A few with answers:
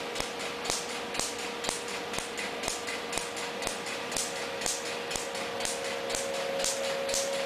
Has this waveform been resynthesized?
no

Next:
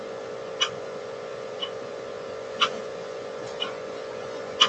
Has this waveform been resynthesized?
yes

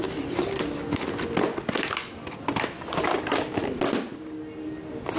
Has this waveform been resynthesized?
no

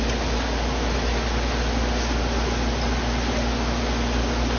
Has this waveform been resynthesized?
no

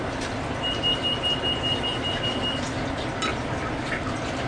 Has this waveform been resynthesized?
no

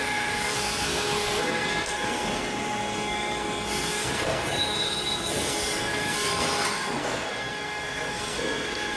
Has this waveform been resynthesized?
yes